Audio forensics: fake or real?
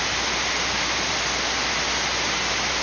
real